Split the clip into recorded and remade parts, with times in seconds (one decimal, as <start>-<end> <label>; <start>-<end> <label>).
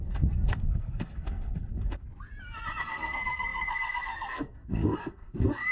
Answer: 0.0-2.0 remade; 2.0-2.8 recorded; 2.8-5.7 remade